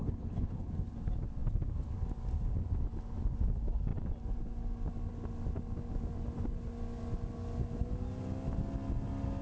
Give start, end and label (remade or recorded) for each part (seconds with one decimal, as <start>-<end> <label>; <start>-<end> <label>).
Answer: 0.0-0.7 remade; 0.7-9.4 recorded